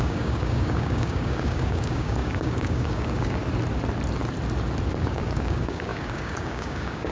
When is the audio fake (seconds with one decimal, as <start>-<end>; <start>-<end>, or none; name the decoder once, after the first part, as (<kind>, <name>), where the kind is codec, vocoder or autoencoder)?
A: 0.0-3.4 (codec, DAC); 4.9-7.1